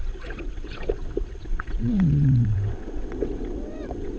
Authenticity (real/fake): fake